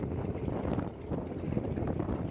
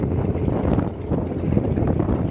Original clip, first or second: second